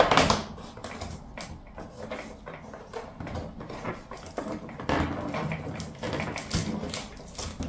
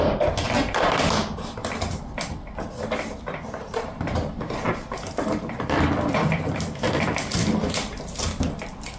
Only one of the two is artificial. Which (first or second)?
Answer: second